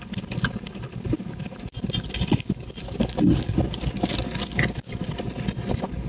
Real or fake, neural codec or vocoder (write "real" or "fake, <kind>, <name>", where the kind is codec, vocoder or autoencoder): real